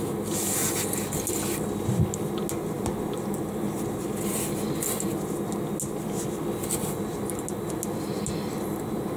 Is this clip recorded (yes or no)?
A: yes